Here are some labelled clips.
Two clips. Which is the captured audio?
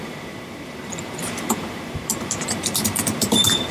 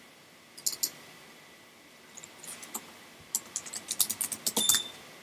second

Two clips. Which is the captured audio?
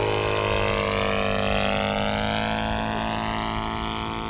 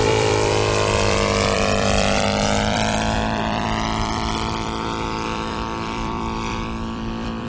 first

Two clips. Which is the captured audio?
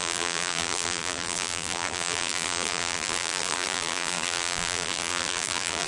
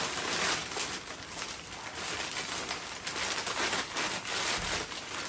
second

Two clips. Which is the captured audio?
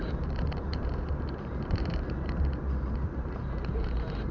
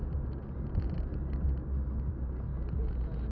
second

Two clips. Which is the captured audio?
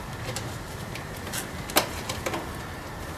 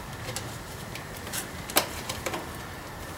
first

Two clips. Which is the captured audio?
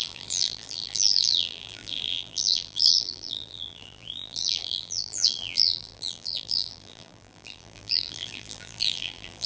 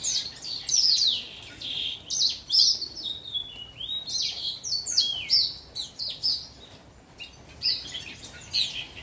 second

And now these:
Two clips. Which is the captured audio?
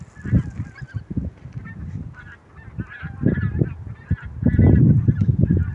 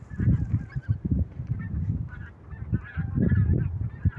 first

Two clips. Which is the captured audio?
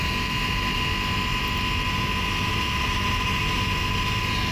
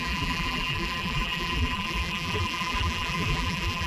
first